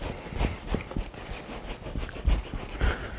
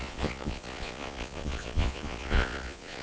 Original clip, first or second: first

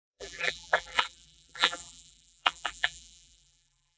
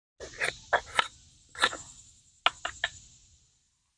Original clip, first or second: second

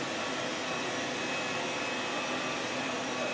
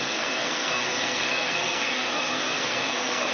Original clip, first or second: first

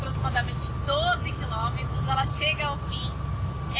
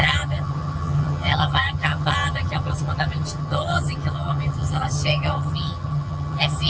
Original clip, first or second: first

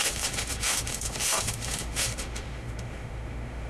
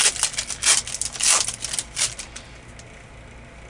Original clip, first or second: second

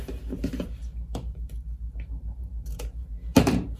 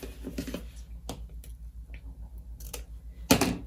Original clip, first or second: second